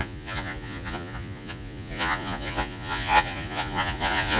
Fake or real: fake